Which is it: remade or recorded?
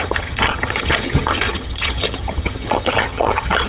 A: remade